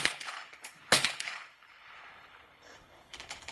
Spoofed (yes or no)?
yes